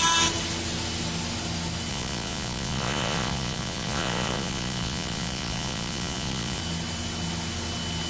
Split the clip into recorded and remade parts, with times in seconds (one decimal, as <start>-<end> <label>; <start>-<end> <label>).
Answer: 0.0-1.9 recorded; 1.9-6.6 remade; 6.6-8.1 recorded